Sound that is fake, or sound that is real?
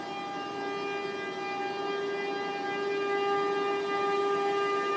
real